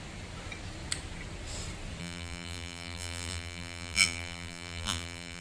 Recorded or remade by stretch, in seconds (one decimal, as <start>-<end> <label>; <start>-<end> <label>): 0.0-2.0 recorded; 2.0-5.4 remade